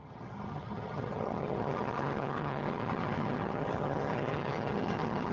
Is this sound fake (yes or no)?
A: yes